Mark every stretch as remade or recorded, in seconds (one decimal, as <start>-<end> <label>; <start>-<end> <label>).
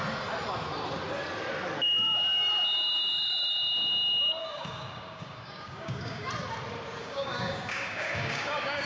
0.0-4.4 recorded; 4.4-6.3 remade; 6.3-7.0 recorded; 7.0-8.9 remade